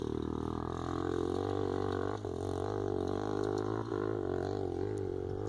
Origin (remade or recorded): recorded